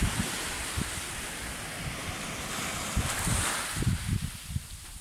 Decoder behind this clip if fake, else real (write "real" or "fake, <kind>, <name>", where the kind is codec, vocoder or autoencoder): real